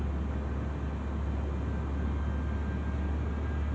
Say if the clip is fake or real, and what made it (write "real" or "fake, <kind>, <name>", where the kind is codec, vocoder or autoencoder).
real